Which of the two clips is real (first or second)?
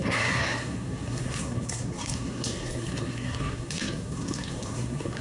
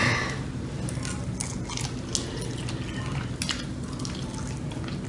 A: second